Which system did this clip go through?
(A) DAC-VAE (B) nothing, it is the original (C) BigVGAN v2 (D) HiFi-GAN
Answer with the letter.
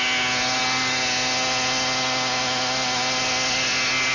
B